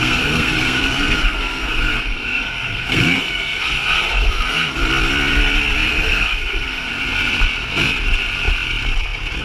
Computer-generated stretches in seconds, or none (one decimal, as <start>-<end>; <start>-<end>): 0.0-4.8; 5.9-6.9